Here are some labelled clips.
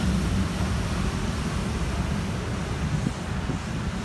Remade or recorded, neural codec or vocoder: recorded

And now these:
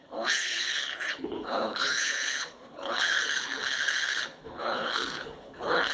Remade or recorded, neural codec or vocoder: remade, codec, HILCodec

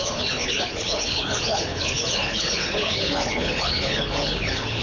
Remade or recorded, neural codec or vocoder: remade, codec, HILCodec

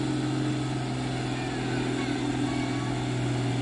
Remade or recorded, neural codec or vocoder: recorded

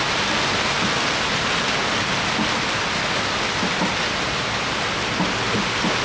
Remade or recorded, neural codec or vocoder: recorded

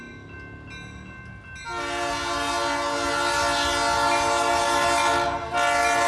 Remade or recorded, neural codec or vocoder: recorded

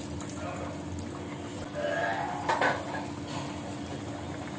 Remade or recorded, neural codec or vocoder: recorded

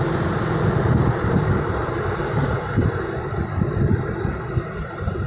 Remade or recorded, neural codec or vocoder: recorded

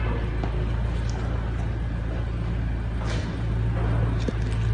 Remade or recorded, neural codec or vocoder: recorded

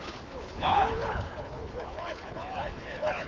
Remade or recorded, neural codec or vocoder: remade, codec, HILCodec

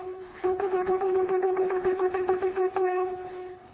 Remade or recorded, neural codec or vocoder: remade, codec, HILCodec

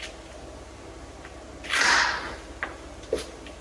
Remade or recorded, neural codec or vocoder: recorded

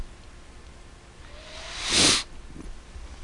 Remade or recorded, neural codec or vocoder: recorded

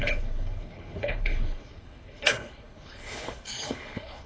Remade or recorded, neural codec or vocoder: remade, codec, HILCodec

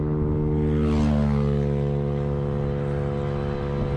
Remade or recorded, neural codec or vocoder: recorded